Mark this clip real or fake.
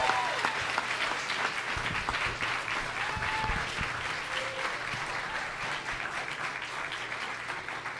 real